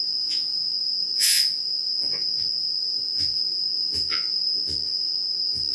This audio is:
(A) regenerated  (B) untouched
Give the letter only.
A